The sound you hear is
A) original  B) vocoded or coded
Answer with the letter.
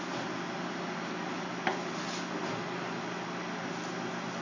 A